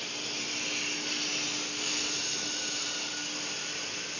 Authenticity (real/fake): real